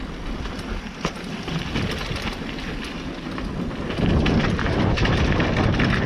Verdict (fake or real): real